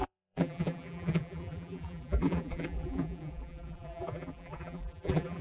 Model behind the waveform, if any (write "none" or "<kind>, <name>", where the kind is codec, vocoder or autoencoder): vocoder, BigVGAN v2